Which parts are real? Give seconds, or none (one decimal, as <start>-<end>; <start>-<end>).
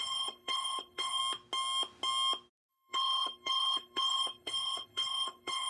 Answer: 1.2-2.7